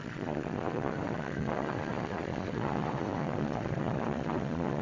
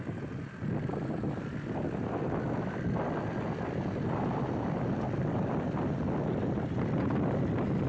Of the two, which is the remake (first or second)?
first